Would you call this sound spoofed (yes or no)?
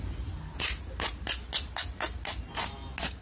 no